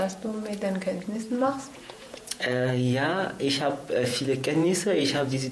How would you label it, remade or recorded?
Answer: remade